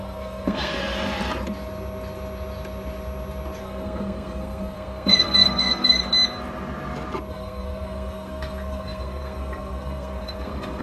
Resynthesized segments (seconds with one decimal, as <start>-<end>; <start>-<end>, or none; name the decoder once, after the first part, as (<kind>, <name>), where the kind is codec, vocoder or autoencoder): 0.0-0.7 (codec, SNAC); 3.6-6.0; 7.3-10.8